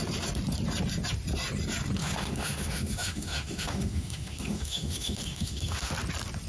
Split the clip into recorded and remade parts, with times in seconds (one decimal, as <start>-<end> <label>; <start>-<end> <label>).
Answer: 0.0-2.0 recorded; 2.0-5.9 remade; 5.9-6.5 recorded